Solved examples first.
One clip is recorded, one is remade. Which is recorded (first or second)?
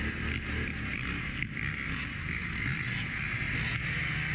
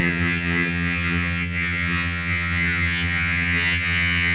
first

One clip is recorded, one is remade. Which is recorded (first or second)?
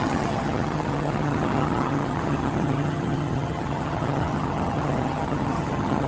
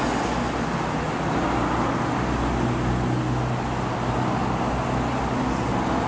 second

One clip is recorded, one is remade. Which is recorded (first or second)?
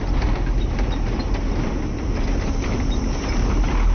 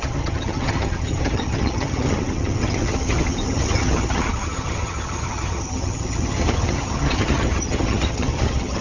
first